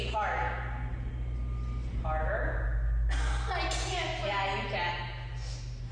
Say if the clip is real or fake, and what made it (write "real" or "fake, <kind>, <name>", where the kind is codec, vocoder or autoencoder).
real